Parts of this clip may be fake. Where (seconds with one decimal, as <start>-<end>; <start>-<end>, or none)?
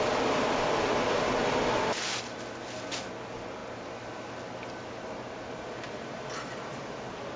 none